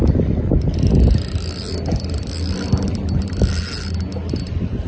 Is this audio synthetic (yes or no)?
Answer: no